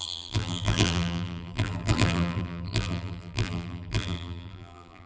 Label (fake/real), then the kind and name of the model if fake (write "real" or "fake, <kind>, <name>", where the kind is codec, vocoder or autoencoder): fake, vocoder, BigVGAN v2